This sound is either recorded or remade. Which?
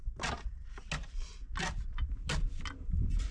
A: recorded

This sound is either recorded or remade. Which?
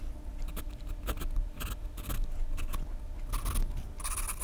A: recorded